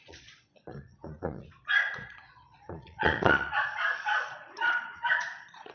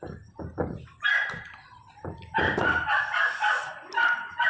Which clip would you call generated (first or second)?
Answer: first